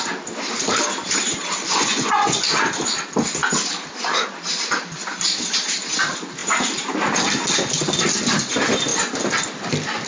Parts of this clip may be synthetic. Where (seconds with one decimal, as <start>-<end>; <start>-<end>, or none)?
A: 1.7-2.4